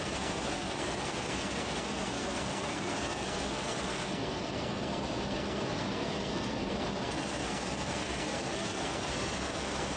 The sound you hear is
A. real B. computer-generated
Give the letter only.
B